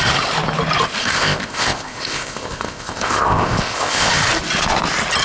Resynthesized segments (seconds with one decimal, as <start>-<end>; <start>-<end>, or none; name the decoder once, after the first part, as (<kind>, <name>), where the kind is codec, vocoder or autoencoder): 1.0-4.1 (codec, ZipCodec)